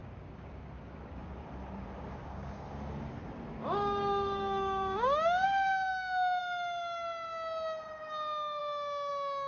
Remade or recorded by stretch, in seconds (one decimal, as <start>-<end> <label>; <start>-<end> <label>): 0.0-3.1 remade; 3.1-3.5 recorded; 3.5-6.4 remade; 6.4-9.5 recorded